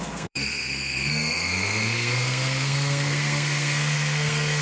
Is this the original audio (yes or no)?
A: no